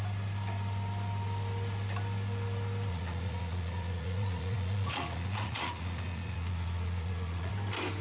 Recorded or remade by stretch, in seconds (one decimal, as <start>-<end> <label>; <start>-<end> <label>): 0.0-2.9 recorded; 2.9-7.5 remade; 7.5-8.0 recorded